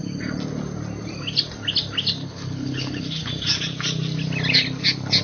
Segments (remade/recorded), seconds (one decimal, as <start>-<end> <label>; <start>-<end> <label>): 0.0-2.2 recorded; 2.2-3.3 remade; 3.3-5.2 recorded